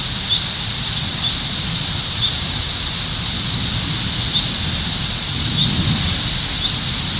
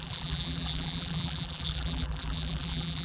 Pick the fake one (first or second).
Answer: second